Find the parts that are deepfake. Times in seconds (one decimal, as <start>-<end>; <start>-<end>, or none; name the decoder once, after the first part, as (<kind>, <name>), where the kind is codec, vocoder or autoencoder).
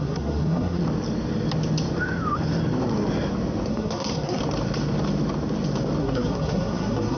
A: 0.0-0.8 (codec, SNAC); 3.7-4.4; 6.0-7.2